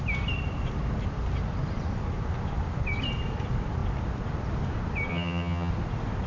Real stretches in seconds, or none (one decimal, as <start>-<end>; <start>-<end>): 0.0-5.1; 5.7-6.3